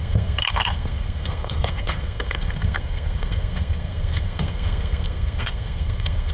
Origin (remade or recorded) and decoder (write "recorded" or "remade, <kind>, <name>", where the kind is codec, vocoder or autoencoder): remade, codec, SNAC